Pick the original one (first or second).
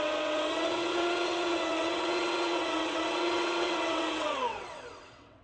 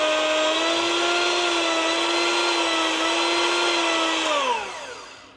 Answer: second